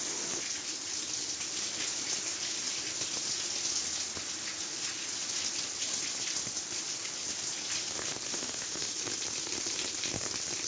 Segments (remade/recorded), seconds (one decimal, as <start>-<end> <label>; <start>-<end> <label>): 0.0-8.3 recorded; 8.3-8.9 remade; 8.9-10.7 recorded